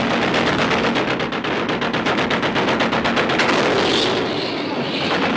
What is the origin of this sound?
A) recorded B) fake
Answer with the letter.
A